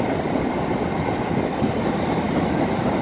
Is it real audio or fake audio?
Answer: real